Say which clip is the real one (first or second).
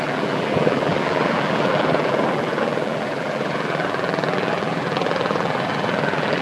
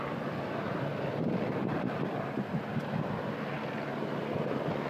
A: second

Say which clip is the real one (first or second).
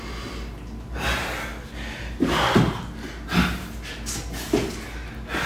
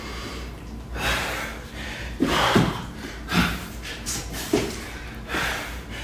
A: first